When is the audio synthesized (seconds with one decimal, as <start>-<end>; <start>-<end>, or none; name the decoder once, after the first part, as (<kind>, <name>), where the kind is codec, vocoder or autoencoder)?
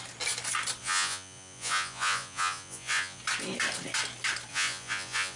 0.8-3.2 (vocoder, Vocos); 4.5-5.4